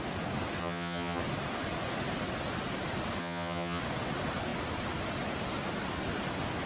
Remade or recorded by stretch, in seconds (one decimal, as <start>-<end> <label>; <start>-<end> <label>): 0.0-0.6 recorded; 0.6-1.2 remade; 1.2-3.2 recorded; 3.2-3.8 remade; 3.8-6.7 recorded